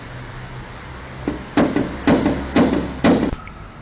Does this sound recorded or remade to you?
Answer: recorded